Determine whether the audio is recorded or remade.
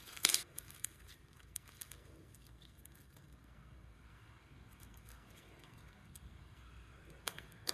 remade